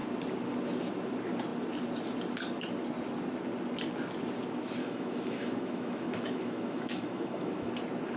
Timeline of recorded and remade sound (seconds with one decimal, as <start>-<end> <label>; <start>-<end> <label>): 0.0-4.8 recorded; 4.8-7.7 remade; 7.7-8.2 recorded